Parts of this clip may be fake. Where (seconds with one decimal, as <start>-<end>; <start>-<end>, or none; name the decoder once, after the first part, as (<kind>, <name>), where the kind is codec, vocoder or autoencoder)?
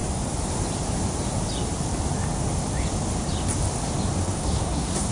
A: 4.2-5.1 (codec, SNAC)